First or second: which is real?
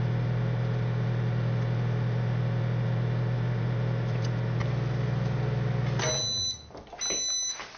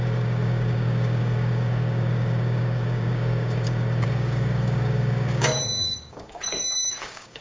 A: first